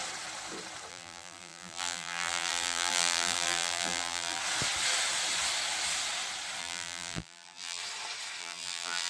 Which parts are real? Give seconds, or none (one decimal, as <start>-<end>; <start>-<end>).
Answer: 0.0-0.9; 4.4-6.6; 7.8-8.4